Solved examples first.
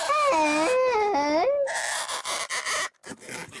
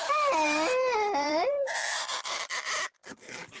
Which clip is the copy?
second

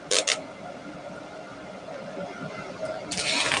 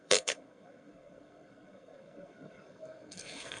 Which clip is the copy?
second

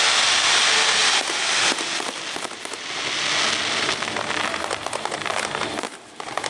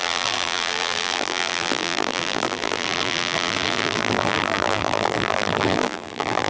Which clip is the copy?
second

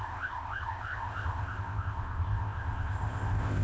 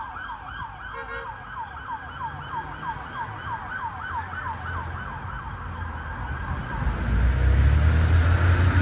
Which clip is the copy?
first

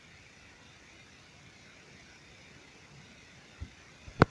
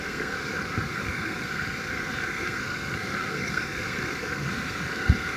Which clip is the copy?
second